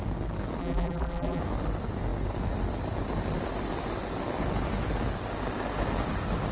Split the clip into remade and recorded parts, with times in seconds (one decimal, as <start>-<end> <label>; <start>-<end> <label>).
0.0-0.6 recorded; 0.6-1.4 remade; 1.4-6.5 recorded